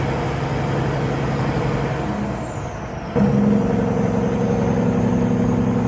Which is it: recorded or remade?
recorded